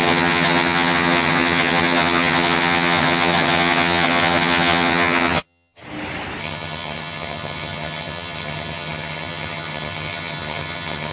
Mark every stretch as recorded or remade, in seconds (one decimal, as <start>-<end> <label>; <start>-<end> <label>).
0.0-5.8 remade; 5.8-6.4 recorded; 6.4-11.1 remade